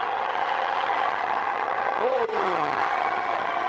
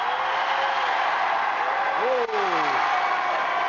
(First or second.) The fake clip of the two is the first